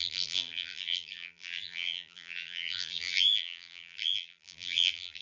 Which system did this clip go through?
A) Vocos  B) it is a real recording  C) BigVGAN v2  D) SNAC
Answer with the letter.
C